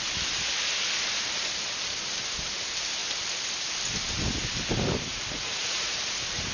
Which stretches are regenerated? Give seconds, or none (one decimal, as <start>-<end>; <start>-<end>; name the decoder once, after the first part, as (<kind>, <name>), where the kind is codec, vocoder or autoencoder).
5.1-6.0 (vocoder, Vocos)